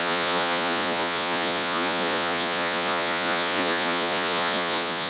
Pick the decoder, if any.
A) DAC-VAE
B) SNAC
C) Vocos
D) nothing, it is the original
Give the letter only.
C